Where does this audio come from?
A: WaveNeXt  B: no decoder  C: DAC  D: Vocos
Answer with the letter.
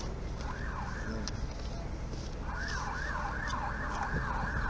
B